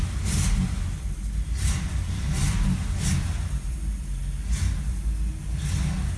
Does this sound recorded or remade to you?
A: recorded